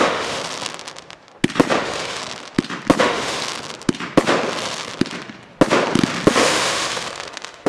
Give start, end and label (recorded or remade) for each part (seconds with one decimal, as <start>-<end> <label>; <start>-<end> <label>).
0.0-0.4 remade; 0.4-1.8 recorded; 1.8-2.2 remade; 2.2-3.0 recorded; 3.0-3.4 remade; 3.4-6.3 recorded; 6.3-7.7 remade